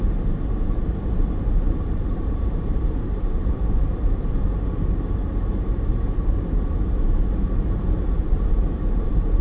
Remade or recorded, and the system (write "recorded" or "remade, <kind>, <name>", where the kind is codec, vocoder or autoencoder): remade, vocoder, BigVGAN v2